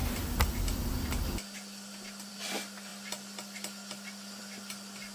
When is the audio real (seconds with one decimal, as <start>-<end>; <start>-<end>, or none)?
0.0-5.1